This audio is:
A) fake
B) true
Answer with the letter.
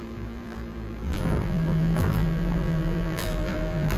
A